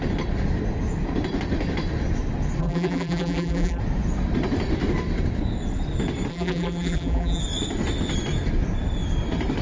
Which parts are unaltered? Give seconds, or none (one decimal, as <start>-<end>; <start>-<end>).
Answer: 0.0-2.6; 3.8-6.3; 7.4-9.6